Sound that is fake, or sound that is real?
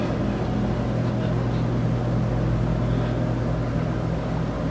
real